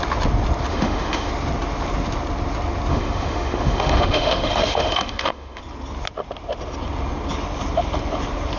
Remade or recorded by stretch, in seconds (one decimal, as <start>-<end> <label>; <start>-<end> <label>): 0.0-0.7 recorded; 0.7-1.3 remade; 1.3-2.9 recorded; 2.9-5.6 remade; 5.6-8.6 recorded